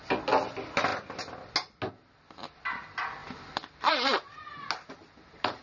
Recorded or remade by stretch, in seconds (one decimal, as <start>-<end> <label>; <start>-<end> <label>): 0.0-5.6 recorded